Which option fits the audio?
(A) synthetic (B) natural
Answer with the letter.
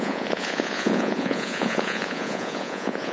A